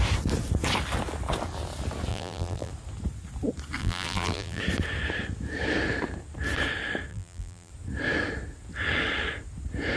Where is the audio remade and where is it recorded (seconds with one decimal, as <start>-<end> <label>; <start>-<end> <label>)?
0.0-2.1 recorded; 2.1-2.7 remade; 2.7-3.8 recorded; 3.8-4.6 remade; 4.6-7.1 recorded; 7.1-7.7 remade; 7.7-10.0 recorded